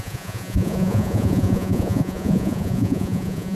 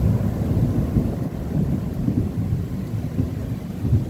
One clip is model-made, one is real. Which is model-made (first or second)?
first